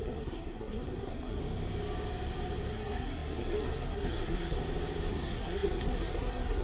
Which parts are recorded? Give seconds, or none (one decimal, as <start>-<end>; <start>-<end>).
1.4-2.7; 4.6-5.1